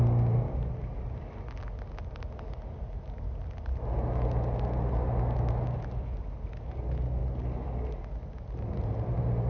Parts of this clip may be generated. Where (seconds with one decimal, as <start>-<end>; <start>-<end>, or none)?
none